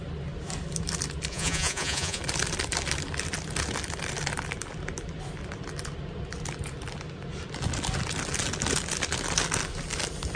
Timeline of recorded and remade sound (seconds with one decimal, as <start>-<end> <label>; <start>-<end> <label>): 0.0-1.3 recorded; 1.3-2.2 remade; 2.2-10.4 recorded